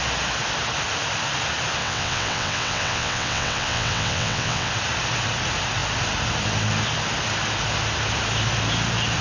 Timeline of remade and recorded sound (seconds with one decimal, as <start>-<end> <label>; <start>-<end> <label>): 0.0-1.8 recorded; 1.8-4.7 remade; 4.7-9.2 recorded